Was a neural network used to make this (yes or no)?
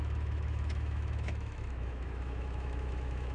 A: yes